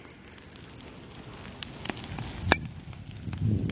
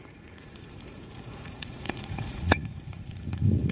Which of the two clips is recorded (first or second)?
first